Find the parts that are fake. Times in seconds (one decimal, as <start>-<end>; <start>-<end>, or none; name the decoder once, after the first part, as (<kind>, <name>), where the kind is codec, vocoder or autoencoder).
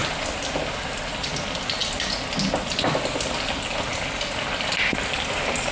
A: none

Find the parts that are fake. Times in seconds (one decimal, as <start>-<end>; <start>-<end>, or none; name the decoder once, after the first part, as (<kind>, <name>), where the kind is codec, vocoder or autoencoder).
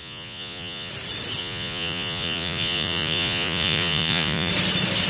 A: 0.0-0.9 (vocoder, Vocos); 1.4-4.5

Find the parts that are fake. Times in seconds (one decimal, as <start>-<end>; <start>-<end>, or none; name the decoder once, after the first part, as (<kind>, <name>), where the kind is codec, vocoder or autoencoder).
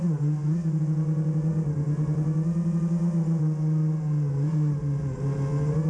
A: none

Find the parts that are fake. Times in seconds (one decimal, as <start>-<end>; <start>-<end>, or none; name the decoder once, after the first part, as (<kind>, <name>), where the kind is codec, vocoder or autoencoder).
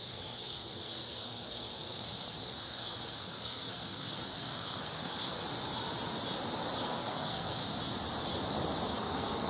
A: 0.0-5.4 (codec, SNAC); 6.8-7.6; 8.9-9.5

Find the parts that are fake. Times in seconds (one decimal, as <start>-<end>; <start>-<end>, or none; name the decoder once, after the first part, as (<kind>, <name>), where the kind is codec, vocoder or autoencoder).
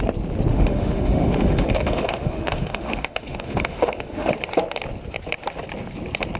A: 0.5-4.3 (autoencoder, DAC-VAE)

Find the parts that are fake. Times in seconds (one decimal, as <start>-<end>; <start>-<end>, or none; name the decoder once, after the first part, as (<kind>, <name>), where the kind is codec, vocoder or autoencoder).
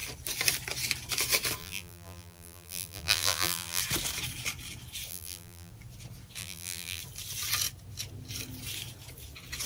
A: 1.6-3.8 (vocoder, BigVGAN v2); 5.1-5.7; 6.4-7.0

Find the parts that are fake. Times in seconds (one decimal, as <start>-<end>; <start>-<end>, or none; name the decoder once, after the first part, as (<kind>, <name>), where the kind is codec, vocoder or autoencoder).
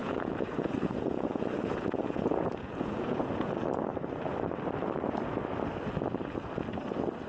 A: 0.0-3.6 (vocoder, Vocos)